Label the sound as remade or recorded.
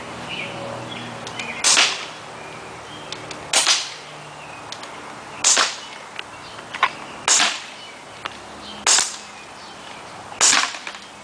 recorded